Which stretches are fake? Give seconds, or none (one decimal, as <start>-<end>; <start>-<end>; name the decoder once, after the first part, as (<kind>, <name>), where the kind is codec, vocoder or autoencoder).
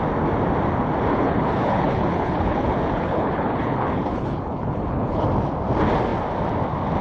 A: 1.1-5.3 (codec, HILCodec)